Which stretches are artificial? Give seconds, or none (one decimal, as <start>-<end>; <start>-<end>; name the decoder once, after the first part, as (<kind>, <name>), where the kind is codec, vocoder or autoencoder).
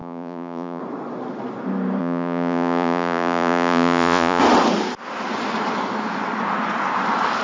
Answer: 0.0-0.8 (vocoder, Vocos); 2.0-4.4